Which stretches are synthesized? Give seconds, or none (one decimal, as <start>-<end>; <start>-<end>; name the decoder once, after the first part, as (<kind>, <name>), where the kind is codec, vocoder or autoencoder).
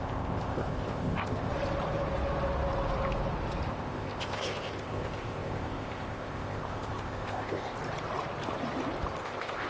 0.0-1.5 (codec, ZipCodec); 3.7-7.8; 9.2-9.7